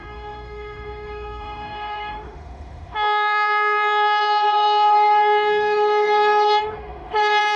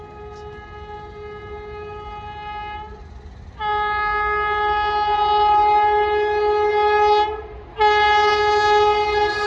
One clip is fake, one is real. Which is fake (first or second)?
first